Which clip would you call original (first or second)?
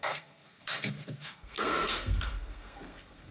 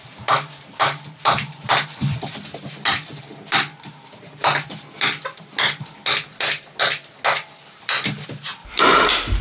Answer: second